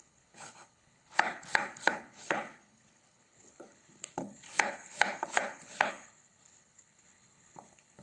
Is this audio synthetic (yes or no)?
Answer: yes